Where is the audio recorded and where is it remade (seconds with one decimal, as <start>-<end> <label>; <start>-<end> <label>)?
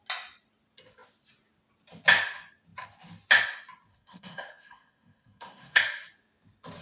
0.0-3.9 recorded; 3.9-5.8 remade; 5.8-6.8 recorded